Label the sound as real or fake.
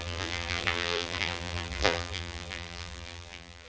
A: fake